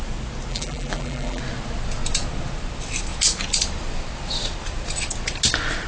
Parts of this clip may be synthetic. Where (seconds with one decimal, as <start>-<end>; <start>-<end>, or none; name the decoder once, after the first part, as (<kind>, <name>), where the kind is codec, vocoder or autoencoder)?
0.5-1.4 (vocoder, BigVGAN v2)